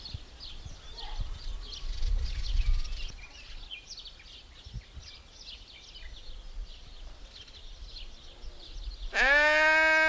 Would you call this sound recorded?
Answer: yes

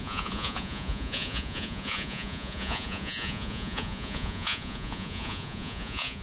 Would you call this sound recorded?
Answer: no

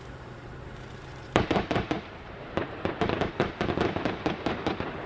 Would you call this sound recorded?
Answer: no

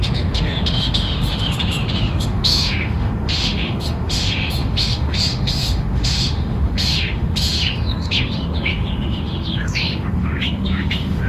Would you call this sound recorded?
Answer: no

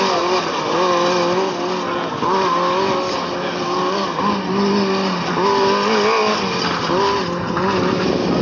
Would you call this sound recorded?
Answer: yes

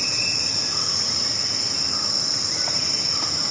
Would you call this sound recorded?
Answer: yes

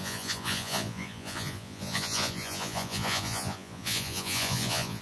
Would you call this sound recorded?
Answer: no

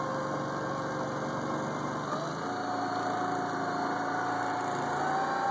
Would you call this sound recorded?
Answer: yes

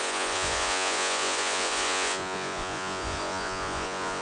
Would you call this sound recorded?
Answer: no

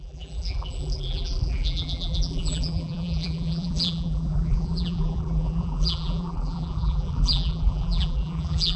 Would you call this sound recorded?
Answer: no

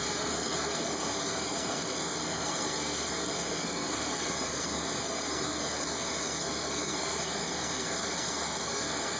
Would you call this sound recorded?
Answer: no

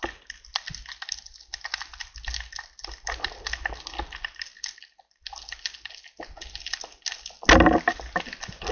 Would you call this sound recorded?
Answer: yes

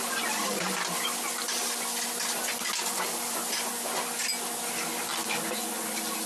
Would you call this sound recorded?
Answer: yes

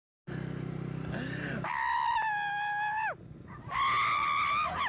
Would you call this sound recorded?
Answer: yes